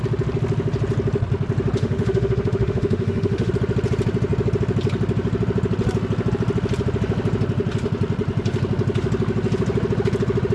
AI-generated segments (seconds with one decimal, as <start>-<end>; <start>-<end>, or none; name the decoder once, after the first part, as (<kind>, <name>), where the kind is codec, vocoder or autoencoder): 1.8-3.5 (autoencoder, DAC-VAE)